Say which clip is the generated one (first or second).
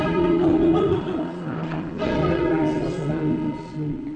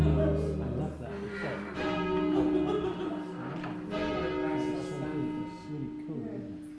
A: first